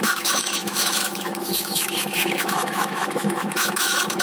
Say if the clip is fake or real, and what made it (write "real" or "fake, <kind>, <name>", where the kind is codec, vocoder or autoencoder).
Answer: fake, autoencoder, DAC-VAE